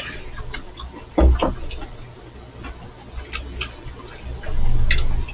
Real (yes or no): yes